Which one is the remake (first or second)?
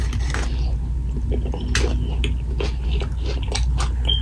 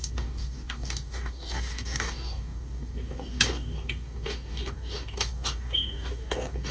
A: second